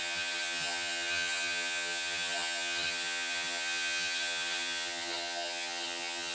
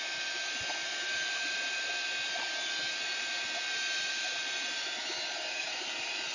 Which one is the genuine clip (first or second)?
second